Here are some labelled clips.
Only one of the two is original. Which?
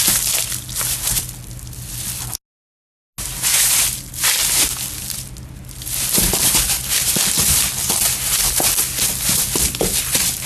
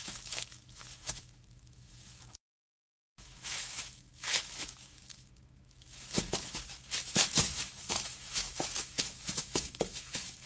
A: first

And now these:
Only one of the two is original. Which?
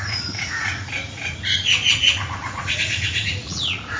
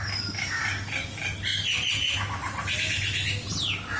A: second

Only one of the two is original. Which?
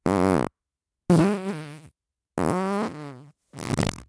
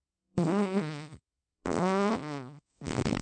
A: first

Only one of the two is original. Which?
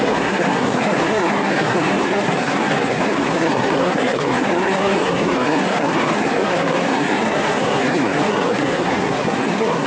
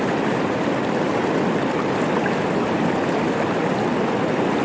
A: second